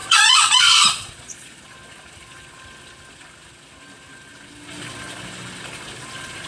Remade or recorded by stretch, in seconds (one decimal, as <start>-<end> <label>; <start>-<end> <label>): 0.0-1.6 remade; 1.6-6.5 recorded